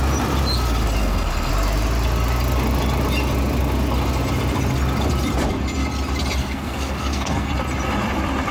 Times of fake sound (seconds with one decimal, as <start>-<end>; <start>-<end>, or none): 1.0-1.5; 6.4-7.5